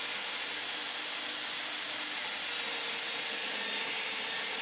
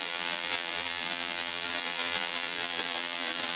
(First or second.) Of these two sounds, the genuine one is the first